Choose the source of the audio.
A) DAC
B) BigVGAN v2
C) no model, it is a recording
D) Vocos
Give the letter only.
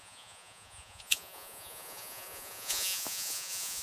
D